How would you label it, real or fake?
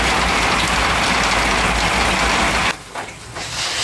real